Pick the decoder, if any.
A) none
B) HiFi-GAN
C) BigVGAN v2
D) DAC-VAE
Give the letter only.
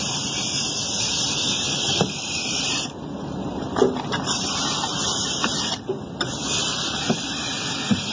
A